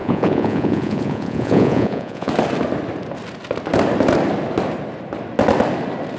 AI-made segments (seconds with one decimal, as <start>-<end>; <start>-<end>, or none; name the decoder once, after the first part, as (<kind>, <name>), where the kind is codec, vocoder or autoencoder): 0.0-2.3 (vocoder, Vocos)